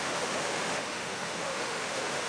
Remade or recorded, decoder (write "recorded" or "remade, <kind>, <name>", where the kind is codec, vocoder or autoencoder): remade, autoencoder, DAC-VAE